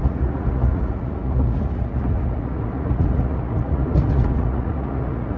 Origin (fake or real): fake